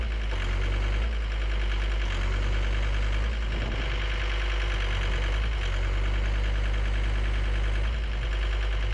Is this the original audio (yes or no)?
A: yes